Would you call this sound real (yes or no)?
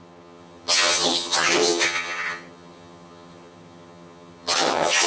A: no